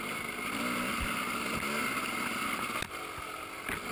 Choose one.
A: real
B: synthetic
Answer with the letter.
A